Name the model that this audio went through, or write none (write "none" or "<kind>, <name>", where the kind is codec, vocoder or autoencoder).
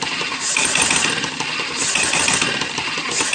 none